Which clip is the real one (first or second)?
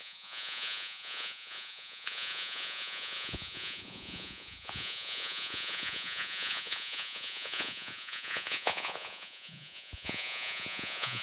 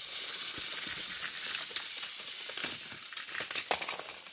second